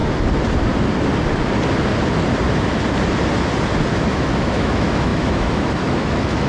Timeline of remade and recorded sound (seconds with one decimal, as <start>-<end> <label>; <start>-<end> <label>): 0.0-3.9 recorded; 3.9-6.5 remade

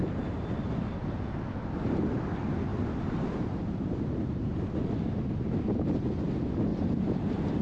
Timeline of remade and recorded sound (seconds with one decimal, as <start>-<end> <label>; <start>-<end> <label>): 0.0-2.7 recorded; 2.7-4.3 remade; 4.3-6.7 recorded; 6.7-7.6 remade

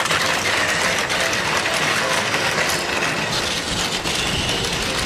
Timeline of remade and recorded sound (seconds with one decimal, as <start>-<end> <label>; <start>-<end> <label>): 0.0-1.9 recorded; 1.9-2.6 remade; 2.6-5.1 recorded